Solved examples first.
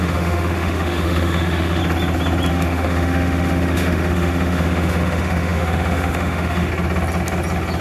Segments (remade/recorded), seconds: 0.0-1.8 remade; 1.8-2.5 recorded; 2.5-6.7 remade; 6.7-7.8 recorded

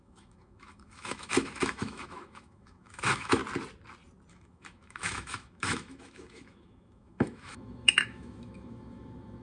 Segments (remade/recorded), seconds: 0.0-3.4 remade; 3.4-4.3 recorded; 4.3-9.4 remade

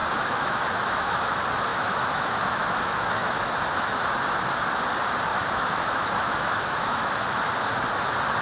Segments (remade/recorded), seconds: 0.0-1.2 remade; 1.2-1.7 recorded; 1.7-3.5 remade; 3.5-5.3 recorded; 5.3-7.2 remade; 7.2-8.4 recorded

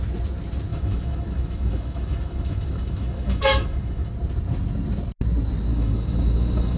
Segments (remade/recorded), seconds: 0.0-0.7 recorded; 0.7-4.1 remade; 4.1-5.7 recorded; 5.7-6.8 remade

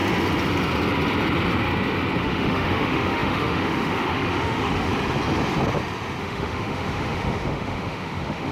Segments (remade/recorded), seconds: 0.0-2.2 recorded; 2.2-4.9 remade; 4.9-6.2 recorded; 6.2-8.5 remade

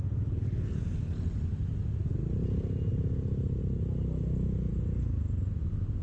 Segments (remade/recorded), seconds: 0.0-6.0 recorded

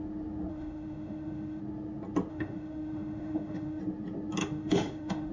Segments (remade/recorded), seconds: 0.0-0.5 recorded; 0.5-1.6 remade; 1.6-2.3 recorded; 2.3-3.8 remade; 3.8-4.4 recorded; 4.4-5.3 remade